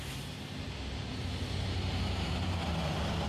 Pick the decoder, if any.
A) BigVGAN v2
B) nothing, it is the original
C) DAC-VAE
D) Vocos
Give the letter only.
B